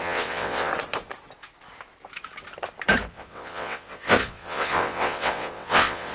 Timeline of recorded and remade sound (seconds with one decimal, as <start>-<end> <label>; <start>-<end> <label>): 0.0-0.7 remade; 0.7-3.1 recorded; 3.1-6.1 remade